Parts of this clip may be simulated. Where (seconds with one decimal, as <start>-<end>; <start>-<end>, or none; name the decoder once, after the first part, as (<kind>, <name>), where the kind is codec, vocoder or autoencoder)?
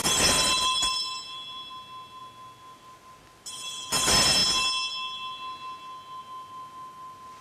0.0-1.7 (vocoder, BigVGAN v2)